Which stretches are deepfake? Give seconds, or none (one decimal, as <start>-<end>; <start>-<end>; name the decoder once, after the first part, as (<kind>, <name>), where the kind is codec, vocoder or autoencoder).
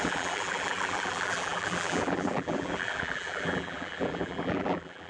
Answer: 0.0-5.1 (vocoder, BigVGAN v2)